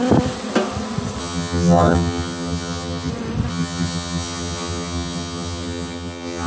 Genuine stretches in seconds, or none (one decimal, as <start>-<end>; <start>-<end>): 0.0-1.2; 3.1-3.5